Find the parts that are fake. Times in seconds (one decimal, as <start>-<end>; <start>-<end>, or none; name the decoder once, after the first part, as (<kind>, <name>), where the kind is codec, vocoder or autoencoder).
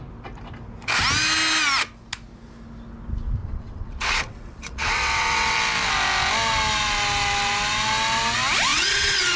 3.4-5.6 (vocoder, WaveNeXt); 8.7-9.4